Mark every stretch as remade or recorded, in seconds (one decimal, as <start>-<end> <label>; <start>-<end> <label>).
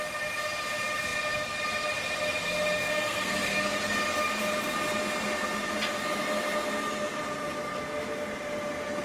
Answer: 0.0-2.8 recorded; 2.8-3.8 remade; 3.8-9.0 recorded